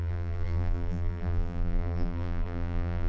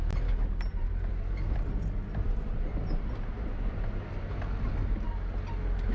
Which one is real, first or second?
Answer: second